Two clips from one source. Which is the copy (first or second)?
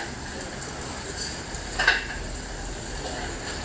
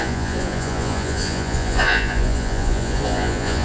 second